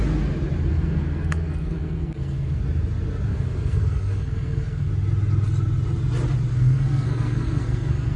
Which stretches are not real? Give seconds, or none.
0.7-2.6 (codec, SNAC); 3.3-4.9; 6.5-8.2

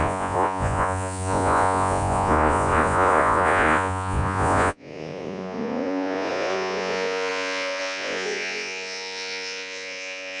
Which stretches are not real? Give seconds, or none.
0.0-10.4 (vocoder, Vocos)